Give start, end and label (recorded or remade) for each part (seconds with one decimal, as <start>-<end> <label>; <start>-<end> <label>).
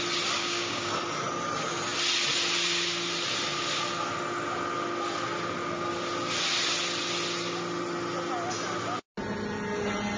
0.0-0.4 recorded; 0.4-0.9 remade; 0.9-10.2 recorded